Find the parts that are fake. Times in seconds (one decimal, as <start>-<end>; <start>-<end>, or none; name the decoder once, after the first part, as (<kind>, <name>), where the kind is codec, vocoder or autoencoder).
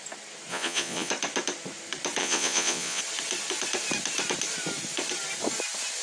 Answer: 0.5-1.1 (vocoder, Vocos); 2.2-3.0